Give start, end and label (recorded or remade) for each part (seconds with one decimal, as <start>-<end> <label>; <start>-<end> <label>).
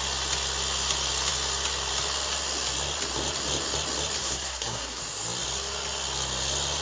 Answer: 0.0-4.2 recorded; 4.2-5.0 remade; 5.0-6.8 recorded